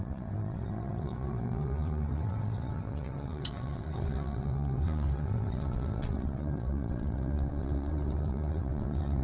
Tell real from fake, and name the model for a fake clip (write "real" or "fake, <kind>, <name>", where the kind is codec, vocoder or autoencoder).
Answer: fake, vocoder, WaveNeXt